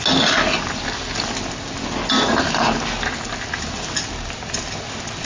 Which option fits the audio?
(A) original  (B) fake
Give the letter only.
A